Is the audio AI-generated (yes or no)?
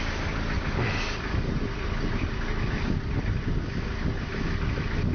no